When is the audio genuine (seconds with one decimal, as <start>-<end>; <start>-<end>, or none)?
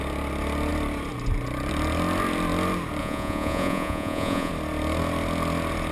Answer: 0.0-3.0; 4.5-5.9